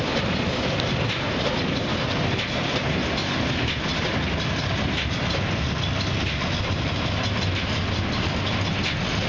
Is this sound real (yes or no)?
yes